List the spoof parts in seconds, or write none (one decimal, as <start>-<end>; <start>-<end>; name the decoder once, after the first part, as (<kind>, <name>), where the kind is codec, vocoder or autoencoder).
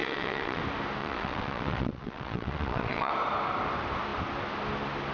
0.0-0.6 (vocoder, WaveNeXt); 1.0-3.1